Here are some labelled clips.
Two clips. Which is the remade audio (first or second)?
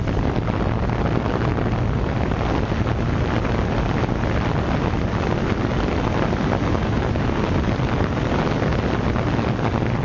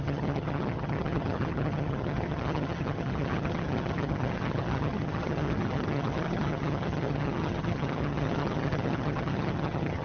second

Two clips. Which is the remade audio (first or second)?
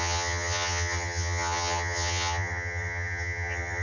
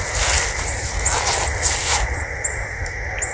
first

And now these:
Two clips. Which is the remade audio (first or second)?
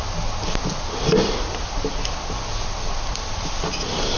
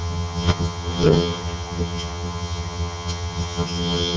second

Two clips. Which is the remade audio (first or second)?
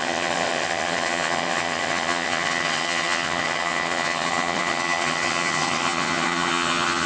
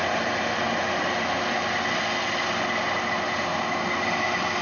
first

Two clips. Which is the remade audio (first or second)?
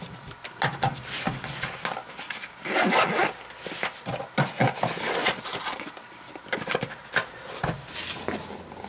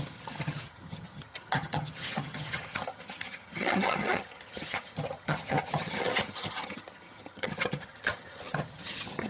second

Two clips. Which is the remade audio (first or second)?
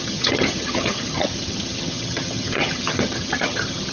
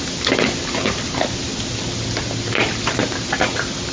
first